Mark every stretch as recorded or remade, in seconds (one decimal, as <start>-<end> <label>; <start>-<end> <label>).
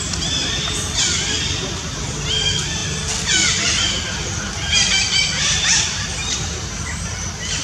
0.0-7.6 remade